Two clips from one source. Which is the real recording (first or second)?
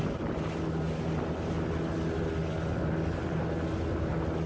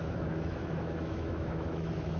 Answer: first